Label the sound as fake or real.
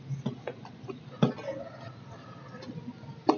real